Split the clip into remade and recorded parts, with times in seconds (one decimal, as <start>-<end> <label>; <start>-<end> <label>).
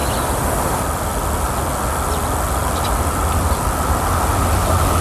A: 0.0-5.0 recorded